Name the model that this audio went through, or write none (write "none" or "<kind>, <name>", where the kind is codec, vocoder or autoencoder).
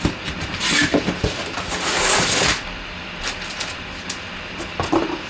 none